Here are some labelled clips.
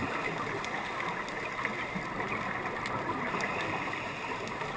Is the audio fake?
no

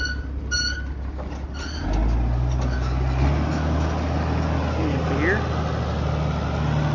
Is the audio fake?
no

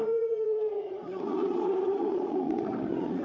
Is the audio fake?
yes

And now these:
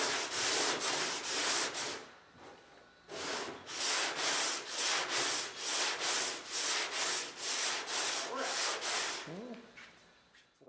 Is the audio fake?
no